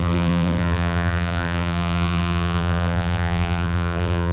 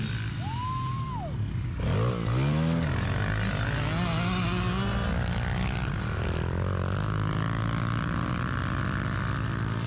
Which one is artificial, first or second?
first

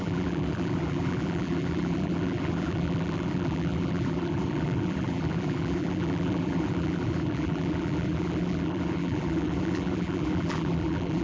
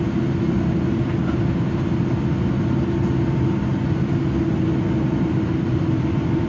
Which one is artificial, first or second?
first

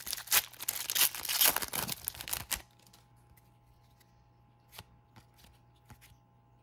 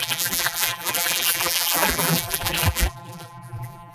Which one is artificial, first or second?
second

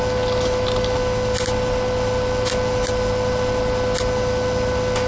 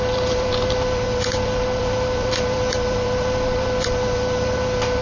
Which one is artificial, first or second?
second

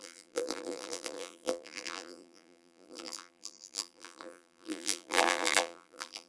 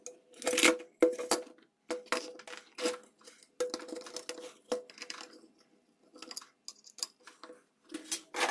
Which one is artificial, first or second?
first